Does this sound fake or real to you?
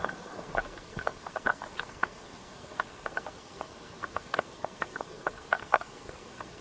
fake